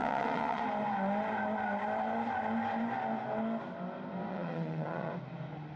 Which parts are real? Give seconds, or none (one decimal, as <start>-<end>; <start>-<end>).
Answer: 0.6-4.3; 5.1-5.8